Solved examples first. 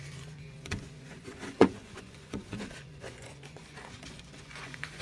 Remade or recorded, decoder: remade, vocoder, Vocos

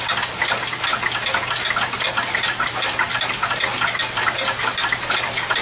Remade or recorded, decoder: recorded